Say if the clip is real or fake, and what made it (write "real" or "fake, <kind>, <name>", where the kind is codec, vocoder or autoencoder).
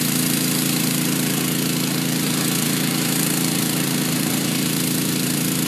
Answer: fake, vocoder, BigVGAN v2